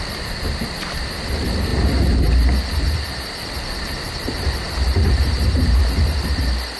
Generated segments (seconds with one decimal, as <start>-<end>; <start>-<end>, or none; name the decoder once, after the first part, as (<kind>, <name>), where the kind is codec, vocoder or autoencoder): 1.7-5.8 (vocoder, BigVGAN v2)